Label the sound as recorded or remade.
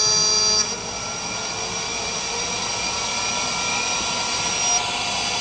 recorded